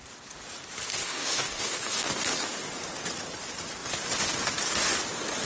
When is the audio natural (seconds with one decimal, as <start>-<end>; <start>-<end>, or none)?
0.0-0.9; 2.1-5.4